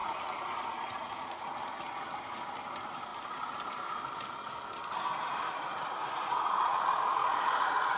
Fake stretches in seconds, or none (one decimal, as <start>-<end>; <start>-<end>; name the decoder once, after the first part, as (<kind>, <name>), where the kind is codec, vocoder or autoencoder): 0.0-1.5 (vocoder, Vocos); 5.4-6.8; 7.2-8.0